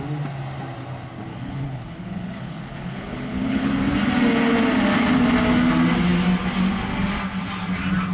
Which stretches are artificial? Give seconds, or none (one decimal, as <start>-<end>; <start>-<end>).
1.3-3.7